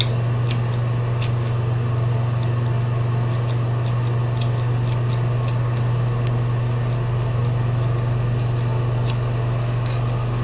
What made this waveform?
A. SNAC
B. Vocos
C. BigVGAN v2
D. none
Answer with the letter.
D